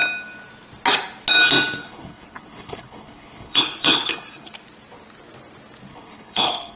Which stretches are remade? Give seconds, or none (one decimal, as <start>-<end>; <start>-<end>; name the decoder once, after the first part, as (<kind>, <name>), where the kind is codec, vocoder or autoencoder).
1.8-4.1 (codec, HILCodec); 5.9-6.8